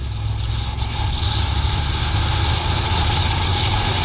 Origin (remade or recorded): recorded